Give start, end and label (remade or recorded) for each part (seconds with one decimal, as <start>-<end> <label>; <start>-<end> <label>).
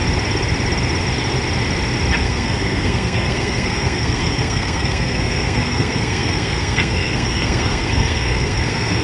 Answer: 0.0-2.2 recorded; 2.2-9.0 remade